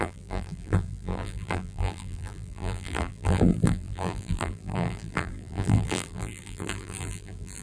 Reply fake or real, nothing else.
fake